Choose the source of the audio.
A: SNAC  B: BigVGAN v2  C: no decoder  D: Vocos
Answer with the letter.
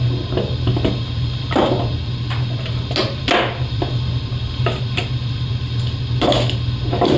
C